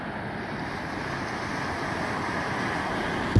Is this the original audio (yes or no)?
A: yes